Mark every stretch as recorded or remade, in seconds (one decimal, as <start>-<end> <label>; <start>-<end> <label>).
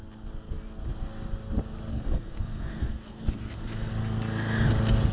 0.0-1.9 recorded; 1.9-3.9 remade; 3.9-5.1 recorded